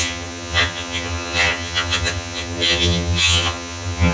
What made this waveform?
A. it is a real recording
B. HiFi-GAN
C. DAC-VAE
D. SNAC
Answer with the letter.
B